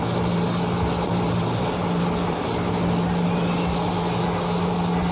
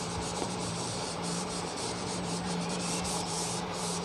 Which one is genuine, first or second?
first